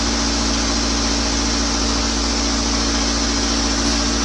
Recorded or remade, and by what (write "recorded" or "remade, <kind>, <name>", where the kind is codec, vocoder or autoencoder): recorded